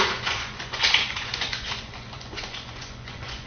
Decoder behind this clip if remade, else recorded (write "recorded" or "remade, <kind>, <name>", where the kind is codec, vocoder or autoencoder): remade, vocoder, Vocos